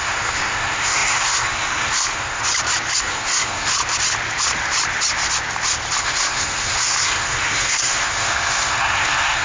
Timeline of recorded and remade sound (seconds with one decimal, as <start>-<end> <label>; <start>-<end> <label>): 0.0-2.4 remade; 2.4-3.0 recorded; 3.0-3.7 remade; 3.7-6.0 recorded; 6.0-9.4 remade